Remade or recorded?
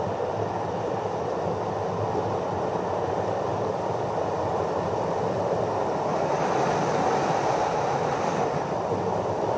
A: recorded